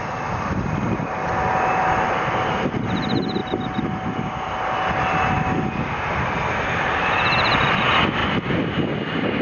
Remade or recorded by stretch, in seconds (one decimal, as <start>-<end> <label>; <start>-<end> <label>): 0.0-9.4 recorded